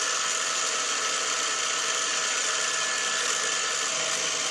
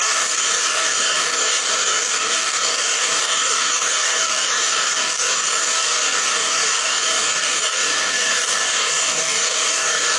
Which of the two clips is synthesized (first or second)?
second